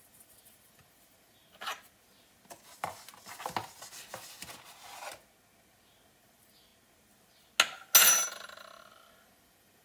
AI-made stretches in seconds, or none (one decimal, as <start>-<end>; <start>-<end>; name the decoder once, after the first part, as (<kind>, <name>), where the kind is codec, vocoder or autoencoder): 0.0-1.7 (vocoder, BigVGAN v2); 6.2-6.7; 8.9-9.8